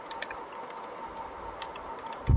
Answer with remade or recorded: recorded